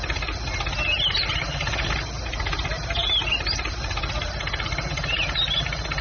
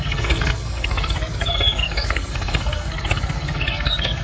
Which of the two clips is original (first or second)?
first